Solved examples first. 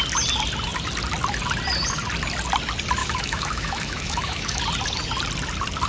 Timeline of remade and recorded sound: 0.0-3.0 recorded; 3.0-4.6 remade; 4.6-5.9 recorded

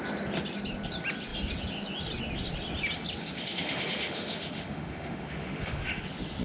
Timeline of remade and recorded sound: 0.0-3.2 recorded; 3.2-6.0 remade; 6.0-6.4 recorded

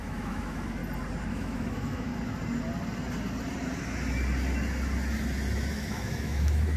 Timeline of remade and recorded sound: 0.0-0.8 remade; 0.8-1.3 recorded; 1.3-2.1 remade; 2.1-5.7 recorded; 5.7-6.8 remade

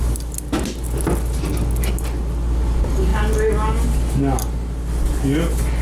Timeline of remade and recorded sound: 0.0-5.8 recorded

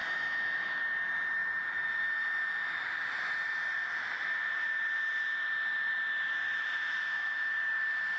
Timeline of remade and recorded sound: 0.0-0.8 remade; 0.8-6.4 recorded; 6.4-7.5 remade; 7.5-8.2 recorded